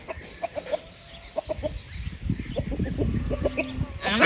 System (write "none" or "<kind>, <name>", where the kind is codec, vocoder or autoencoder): none